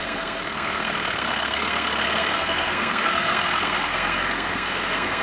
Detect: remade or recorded remade